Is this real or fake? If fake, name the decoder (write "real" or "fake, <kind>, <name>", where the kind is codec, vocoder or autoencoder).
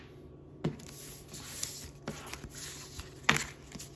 real